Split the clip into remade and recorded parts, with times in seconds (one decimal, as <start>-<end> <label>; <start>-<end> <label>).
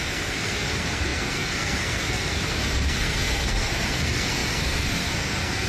0.0-5.7 remade